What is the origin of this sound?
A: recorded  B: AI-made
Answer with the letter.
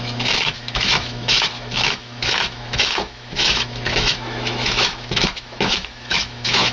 B